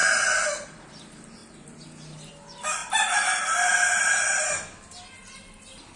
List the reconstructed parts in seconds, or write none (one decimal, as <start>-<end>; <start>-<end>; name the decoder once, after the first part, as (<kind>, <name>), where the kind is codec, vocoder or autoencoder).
none